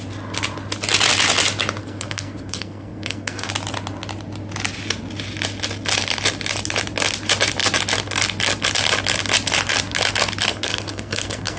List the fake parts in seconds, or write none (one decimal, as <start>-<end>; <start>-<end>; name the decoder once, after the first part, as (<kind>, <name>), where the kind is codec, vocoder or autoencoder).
1.8-3.5 (codec, SNAC); 10.5-11.6